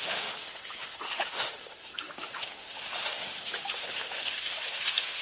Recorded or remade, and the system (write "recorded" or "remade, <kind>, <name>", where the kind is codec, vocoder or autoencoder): remade, autoencoder, DAC-VAE